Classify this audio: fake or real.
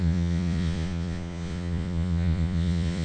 fake